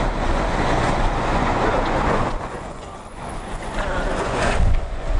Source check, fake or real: fake